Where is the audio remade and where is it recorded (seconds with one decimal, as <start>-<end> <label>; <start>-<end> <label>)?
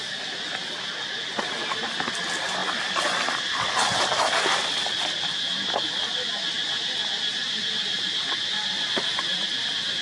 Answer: 0.0-10.0 recorded